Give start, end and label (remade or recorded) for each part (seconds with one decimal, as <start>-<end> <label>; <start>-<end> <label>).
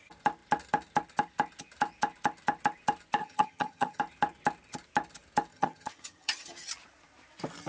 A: 0.0-3.2 recorded; 3.2-4.0 remade; 4.0-5.5 recorded; 5.5-6.7 remade; 6.7-7.7 recorded